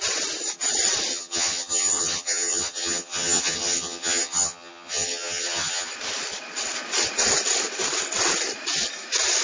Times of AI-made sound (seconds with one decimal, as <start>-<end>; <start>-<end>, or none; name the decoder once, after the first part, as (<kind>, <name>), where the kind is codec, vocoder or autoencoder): 1.1-5.9 (vocoder, HiFi-GAN)